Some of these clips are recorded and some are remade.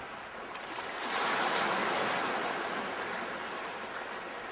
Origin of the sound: recorded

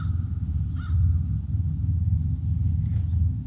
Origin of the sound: recorded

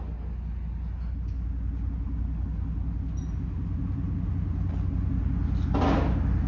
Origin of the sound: recorded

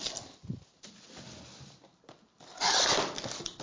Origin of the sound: recorded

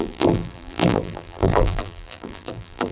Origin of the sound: remade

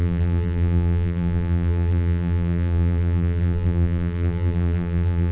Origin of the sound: remade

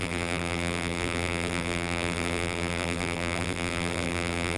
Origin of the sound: remade